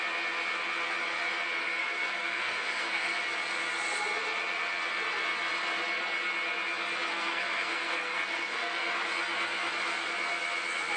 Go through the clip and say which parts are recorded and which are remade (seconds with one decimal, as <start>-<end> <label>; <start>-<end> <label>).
0.0-1.6 recorded; 1.6-3.2 remade; 3.2-7.1 recorded; 7.1-8.9 remade; 8.9-11.0 recorded